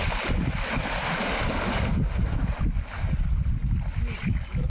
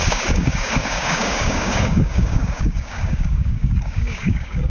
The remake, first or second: second